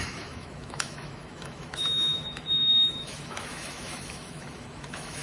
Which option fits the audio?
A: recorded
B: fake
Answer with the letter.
B